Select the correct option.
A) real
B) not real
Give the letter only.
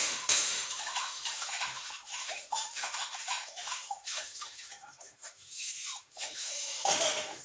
B